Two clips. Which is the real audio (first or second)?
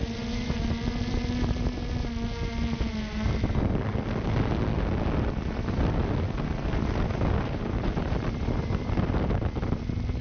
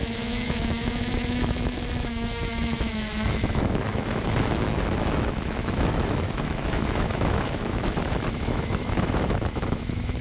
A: first